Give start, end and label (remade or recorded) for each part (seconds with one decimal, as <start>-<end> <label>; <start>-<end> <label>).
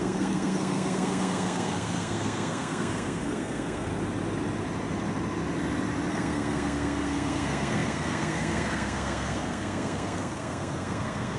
0.0-3.9 remade; 3.9-6.1 recorded; 6.1-11.4 remade